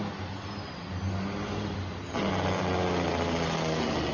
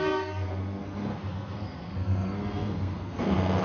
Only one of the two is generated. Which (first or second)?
second